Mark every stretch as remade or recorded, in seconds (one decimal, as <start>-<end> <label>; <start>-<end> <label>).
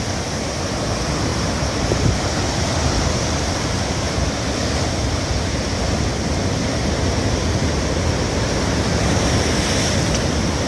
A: 0.0-1.3 recorded; 1.3-5.2 remade; 5.2-7.6 recorded; 7.6-9.7 remade; 9.7-10.7 recorded